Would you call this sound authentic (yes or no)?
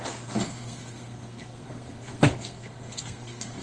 no